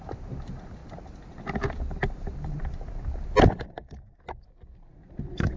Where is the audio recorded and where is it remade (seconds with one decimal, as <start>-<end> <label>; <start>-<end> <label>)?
0.0-5.6 recorded